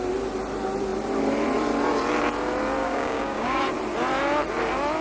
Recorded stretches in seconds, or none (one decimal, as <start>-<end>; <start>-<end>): 0.0-2.8; 3.6-5.0